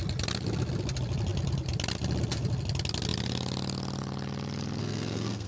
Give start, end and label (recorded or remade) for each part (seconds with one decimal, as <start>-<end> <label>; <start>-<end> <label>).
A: 0.0-4.8 recorded; 4.8-5.5 remade